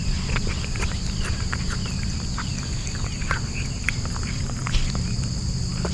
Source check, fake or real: real